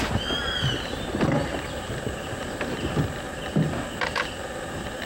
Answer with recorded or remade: recorded